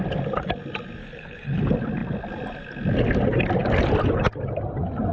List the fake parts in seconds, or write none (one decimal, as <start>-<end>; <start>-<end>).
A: 1.0-1.6